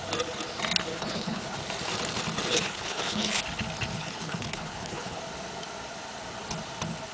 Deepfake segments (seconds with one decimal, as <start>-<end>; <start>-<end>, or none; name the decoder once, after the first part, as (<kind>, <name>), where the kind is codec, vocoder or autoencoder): 0.9-1.4 (codec, HILCodec); 2.5-3.4; 4.0-5.2